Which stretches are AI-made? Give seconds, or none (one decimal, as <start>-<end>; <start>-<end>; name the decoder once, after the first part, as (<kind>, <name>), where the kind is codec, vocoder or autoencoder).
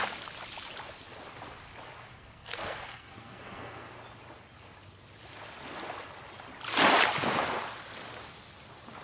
2.1-3.9 (codec, SNAC)